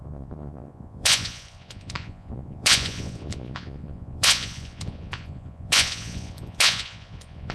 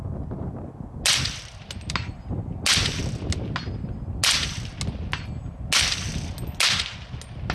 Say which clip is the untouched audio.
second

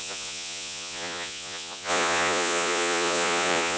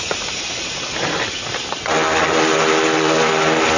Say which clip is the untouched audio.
second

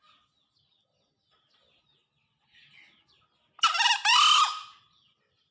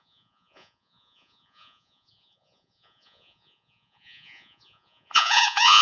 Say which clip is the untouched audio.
first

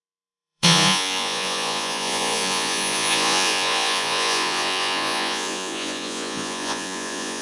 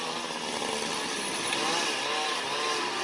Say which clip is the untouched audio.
second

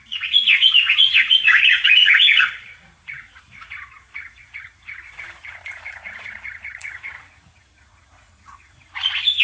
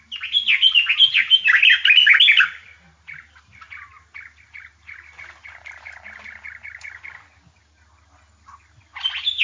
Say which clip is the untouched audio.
second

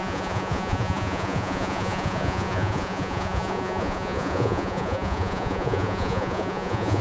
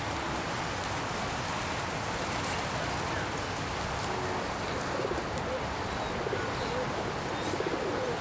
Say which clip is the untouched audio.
second